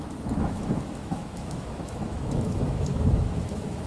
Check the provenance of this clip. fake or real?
fake